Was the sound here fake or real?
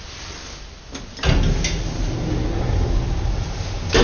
real